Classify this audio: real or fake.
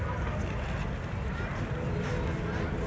real